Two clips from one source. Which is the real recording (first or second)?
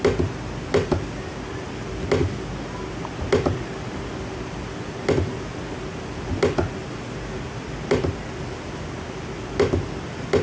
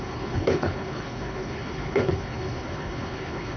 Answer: first